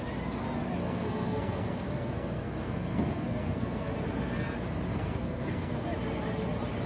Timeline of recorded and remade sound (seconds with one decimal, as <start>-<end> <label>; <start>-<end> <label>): 0.0-0.8 recorded; 0.8-3.9 remade; 3.9-4.9 recorded; 4.9-5.8 remade; 5.8-6.9 recorded